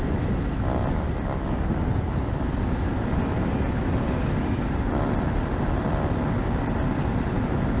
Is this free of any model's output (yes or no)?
yes